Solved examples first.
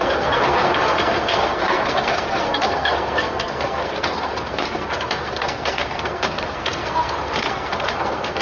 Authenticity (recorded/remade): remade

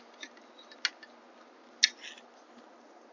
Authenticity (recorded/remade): recorded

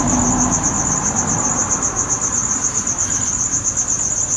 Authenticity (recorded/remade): recorded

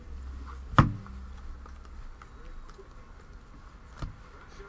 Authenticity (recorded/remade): recorded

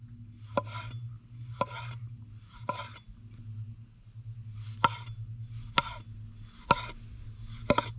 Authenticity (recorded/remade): recorded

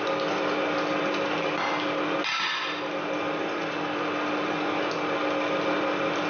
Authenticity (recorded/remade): recorded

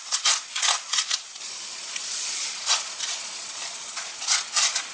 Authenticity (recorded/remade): remade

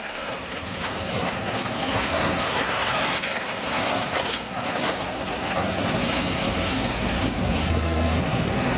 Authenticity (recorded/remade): remade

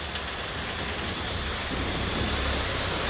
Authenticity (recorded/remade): recorded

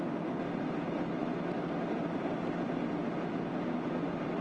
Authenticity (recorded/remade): recorded